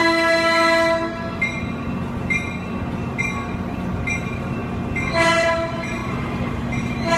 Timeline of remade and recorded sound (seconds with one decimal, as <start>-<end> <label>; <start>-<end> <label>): 0.0-4.1 recorded; 4.1-4.6 remade; 4.6-5.3 recorded; 5.3-7.2 remade